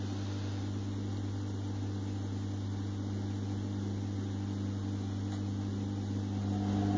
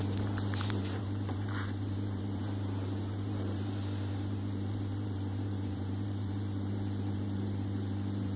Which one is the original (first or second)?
first